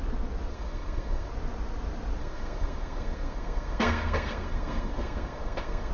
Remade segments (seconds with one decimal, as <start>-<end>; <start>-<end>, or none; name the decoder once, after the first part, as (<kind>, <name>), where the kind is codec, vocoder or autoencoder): 0.5-1.3 (codec, SNAC); 2.2-5.9

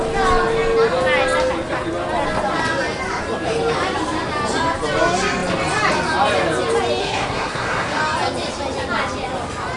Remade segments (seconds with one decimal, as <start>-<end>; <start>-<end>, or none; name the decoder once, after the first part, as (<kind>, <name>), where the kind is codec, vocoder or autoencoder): 7.0-8.0 (codec, SNAC)

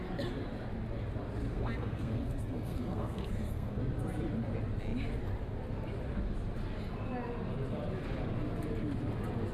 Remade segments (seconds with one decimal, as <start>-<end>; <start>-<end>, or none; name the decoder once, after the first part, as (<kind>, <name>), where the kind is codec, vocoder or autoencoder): 1.5-3.8 (codec, SNAC)

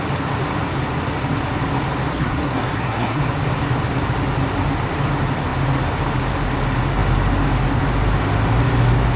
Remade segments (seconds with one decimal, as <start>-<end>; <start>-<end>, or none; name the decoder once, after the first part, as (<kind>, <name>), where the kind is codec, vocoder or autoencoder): 2.1-3.2 (codec, SNAC)

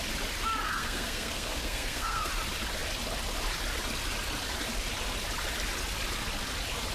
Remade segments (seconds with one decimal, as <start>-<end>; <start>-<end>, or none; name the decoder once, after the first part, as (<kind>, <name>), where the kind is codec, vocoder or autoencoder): 0.6-2.3 (codec, SNAC)